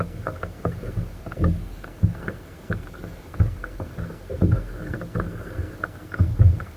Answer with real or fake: fake